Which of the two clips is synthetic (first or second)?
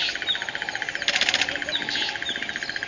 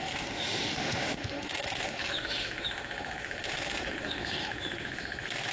second